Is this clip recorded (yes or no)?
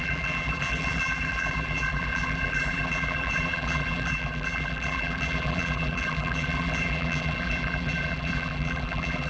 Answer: no